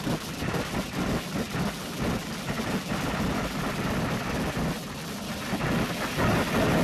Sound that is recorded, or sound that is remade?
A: recorded